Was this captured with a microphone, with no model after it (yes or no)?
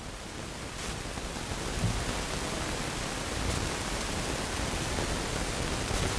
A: yes